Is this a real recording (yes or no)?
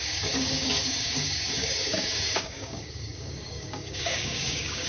no